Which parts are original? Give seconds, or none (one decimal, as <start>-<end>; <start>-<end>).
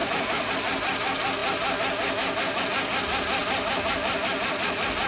0.5-5.1